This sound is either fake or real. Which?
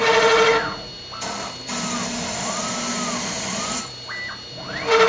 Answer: real